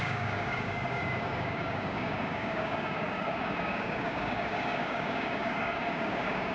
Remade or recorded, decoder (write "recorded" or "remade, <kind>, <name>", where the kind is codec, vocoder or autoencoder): remade, codec, DAC